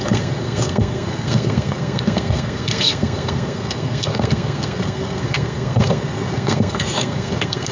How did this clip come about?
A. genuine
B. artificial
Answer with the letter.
B